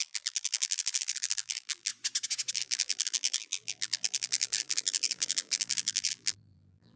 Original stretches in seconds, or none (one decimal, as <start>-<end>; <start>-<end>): 1.9-2.5